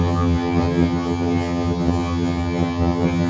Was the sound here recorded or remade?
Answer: remade